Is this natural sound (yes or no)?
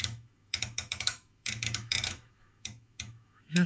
no